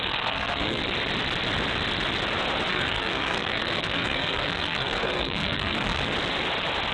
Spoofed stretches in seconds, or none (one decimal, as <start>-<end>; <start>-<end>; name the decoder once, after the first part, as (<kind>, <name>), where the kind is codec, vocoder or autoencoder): 0.0-0.8 (codec, SNAC); 2.7-6.0